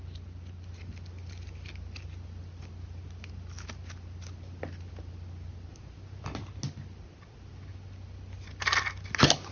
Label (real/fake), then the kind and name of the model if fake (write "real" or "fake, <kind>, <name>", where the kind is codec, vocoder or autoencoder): real